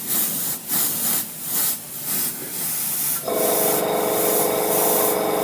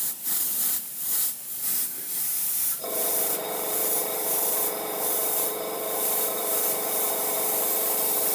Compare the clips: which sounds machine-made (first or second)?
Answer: second